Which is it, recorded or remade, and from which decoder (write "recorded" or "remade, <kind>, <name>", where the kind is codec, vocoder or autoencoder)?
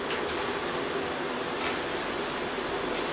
recorded